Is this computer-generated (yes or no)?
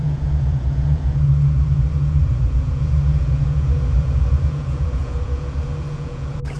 yes